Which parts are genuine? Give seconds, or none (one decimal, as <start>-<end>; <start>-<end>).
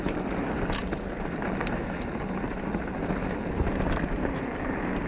0.0-5.1